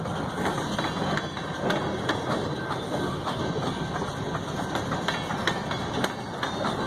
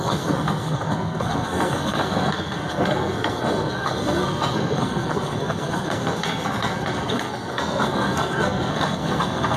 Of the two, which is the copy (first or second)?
second